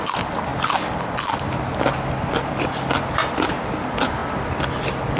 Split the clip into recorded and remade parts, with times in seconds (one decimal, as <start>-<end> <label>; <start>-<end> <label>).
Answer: 0.0-5.2 recorded